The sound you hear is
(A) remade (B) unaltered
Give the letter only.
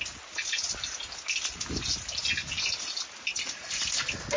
B